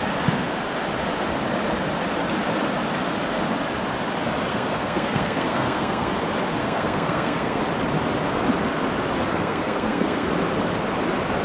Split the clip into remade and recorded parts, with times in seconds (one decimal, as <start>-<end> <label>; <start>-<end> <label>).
0.0-4.5 recorded; 4.5-6.1 remade; 6.1-6.6 recorded; 6.6-7.6 remade; 7.6-9.3 recorded; 9.3-10.3 remade; 10.3-11.4 recorded